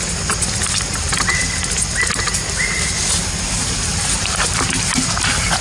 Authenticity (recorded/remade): recorded